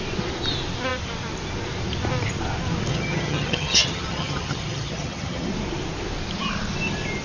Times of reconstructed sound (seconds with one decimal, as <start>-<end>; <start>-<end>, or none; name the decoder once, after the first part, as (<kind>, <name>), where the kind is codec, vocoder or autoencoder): 2.9-5.5 (vocoder, HiFi-GAN)